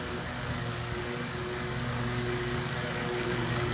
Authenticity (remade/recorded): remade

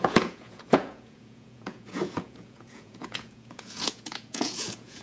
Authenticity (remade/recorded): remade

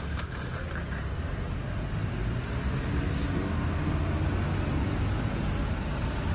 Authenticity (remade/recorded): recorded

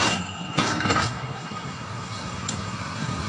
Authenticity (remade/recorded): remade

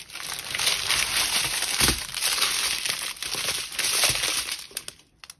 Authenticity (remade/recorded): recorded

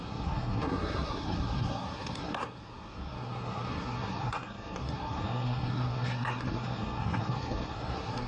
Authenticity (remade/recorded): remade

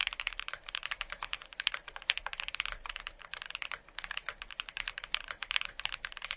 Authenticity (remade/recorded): remade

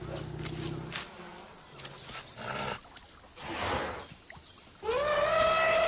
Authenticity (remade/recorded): recorded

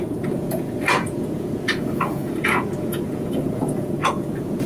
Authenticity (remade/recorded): remade